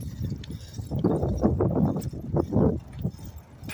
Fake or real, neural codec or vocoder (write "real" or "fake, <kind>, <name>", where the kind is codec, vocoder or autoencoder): real